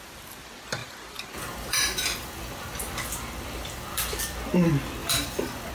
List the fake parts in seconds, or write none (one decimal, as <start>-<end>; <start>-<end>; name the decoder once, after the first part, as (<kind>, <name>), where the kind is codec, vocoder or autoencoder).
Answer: 0.8-4.2 (vocoder, BigVGAN v2); 5.0-5.7